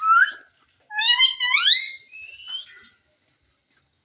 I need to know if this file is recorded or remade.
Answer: recorded